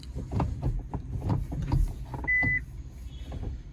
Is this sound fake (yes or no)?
no